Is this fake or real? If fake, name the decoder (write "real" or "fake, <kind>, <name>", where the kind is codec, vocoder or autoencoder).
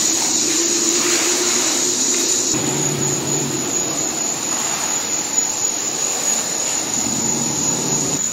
fake, vocoder, BigVGAN v2